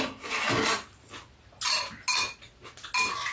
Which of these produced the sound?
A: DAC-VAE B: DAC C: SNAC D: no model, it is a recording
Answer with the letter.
D